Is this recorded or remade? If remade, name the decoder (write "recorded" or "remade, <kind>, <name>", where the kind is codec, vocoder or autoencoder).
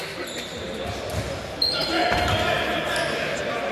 recorded